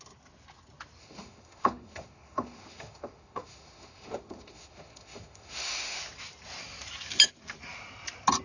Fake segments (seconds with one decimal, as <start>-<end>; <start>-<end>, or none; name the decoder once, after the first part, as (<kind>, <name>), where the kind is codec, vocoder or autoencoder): 1.0-6.0 (autoencoder, DAC-VAE)